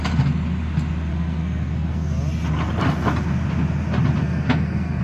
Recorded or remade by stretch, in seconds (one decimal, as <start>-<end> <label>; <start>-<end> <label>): 0.0-1.1 recorded; 1.1-2.1 remade; 2.1-4.2 recorded; 4.2-5.0 remade